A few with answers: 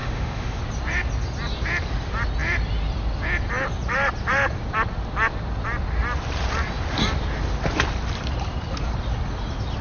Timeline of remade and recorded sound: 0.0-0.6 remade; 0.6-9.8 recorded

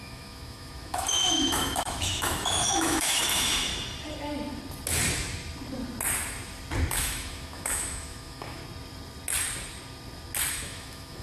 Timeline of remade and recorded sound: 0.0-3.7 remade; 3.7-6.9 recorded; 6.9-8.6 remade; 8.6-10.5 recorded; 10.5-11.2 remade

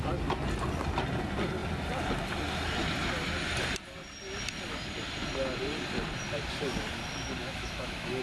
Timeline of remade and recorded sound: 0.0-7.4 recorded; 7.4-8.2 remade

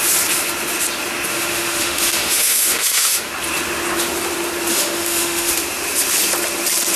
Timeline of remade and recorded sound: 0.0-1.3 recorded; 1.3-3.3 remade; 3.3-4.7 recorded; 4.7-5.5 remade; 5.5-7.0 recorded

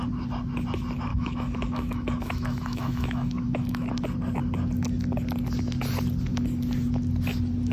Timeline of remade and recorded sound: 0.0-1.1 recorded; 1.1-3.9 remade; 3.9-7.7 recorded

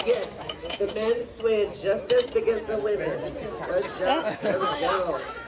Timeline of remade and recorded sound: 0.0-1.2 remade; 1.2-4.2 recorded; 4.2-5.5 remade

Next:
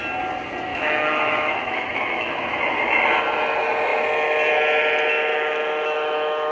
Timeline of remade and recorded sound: 0.0-0.7 recorded; 0.7-2.6 remade; 2.6-5.3 recorded; 5.3-6.5 remade